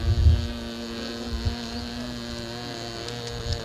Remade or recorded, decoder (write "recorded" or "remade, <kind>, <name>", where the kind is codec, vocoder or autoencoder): recorded